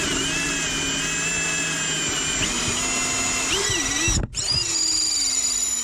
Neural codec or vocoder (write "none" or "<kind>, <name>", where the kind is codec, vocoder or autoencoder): none